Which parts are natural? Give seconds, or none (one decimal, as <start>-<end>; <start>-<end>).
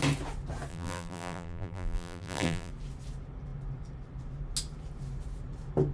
0.0-0.7; 2.7-5.9